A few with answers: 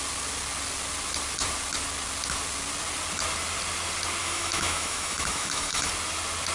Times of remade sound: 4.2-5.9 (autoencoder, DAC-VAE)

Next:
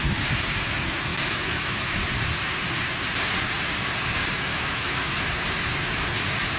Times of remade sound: 1.1-2.0 (autoencoder, DAC-VAE); 4.5-5.1

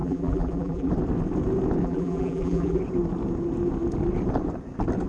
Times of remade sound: 0.0-0.9 (vocoder, BigVGAN v2); 1.8-2.8